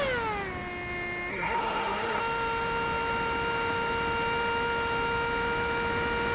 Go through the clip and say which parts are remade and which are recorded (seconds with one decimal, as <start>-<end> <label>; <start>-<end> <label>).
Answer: 0.0-1.3 recorded; 1.3-2.2 remade; 2.2-6.3 recorded